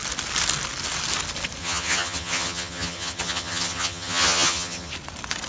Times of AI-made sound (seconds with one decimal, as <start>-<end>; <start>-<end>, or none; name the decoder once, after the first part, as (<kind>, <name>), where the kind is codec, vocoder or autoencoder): 1.6-4.9 (vocoder, HiFi-GAN)